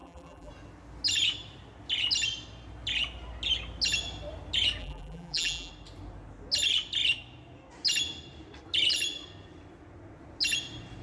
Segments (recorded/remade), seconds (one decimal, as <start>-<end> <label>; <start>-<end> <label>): 0.0-0.5 remade; 0.5-4.8 recorded; 4.8-5.7 remade; 5.7-11.0 recorded